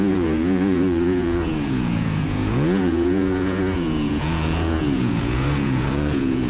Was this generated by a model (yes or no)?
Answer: yes